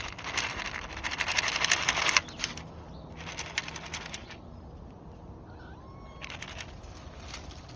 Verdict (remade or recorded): recorded